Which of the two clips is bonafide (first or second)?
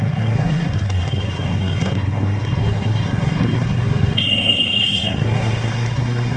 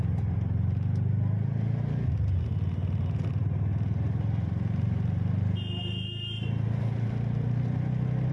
second